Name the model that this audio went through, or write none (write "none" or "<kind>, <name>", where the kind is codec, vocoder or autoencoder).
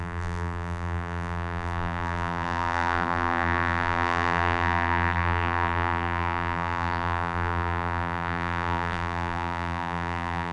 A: vocoder, BigVGAN v2